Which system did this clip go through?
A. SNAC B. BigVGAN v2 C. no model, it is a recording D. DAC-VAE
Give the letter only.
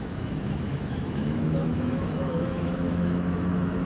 D